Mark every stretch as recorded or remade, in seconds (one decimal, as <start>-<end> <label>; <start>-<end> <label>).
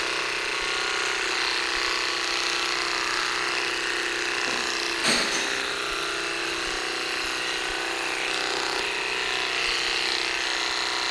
0.0-11.1 recorded